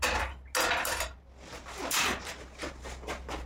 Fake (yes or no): no